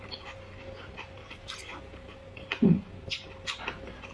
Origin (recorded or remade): recorded